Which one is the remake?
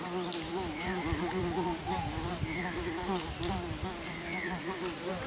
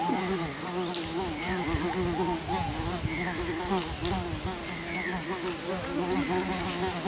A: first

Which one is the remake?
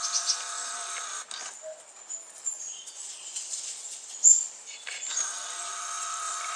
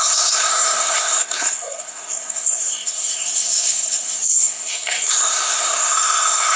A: second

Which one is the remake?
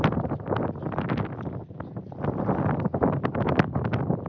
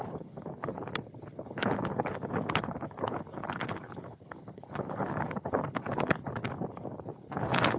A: second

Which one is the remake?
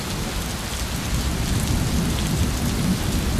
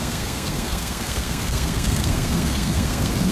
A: second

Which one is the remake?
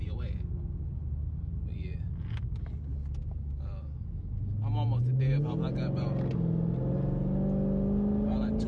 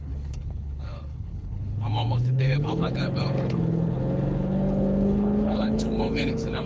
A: second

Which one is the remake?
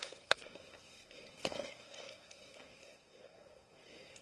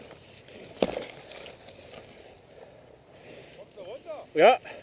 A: first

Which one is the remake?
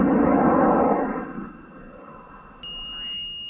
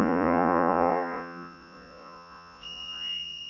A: second